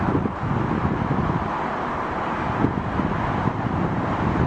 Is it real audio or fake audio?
real